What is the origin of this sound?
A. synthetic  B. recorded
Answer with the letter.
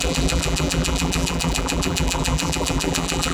A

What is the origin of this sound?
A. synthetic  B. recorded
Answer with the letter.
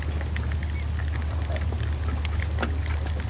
B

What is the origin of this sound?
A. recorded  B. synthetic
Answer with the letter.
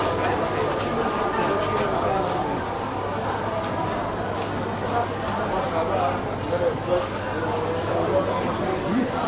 A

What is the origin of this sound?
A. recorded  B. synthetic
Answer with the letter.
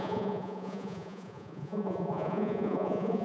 B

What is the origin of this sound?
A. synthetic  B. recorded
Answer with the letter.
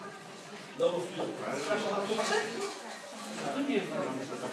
A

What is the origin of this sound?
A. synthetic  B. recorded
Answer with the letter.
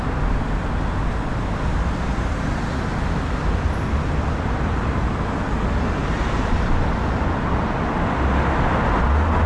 B